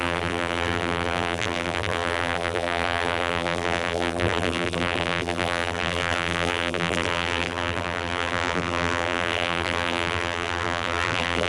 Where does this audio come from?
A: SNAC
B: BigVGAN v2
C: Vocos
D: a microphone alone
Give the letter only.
B